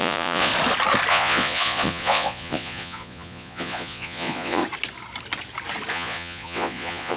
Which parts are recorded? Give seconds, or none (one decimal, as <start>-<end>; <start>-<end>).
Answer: 0.5-1.1; 4.6-5.9